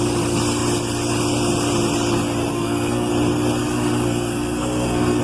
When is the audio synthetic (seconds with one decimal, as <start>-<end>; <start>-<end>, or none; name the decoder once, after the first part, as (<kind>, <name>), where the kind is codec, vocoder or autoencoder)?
2.5-3.1 (codec, SNAC); 3.6-5.2